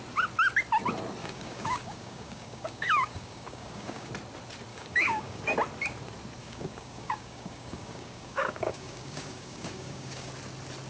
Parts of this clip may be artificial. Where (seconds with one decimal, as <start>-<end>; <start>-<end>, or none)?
1.2-4.1; 4.7-5.4; 6.4-10.3